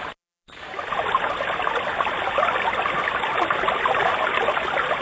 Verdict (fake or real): real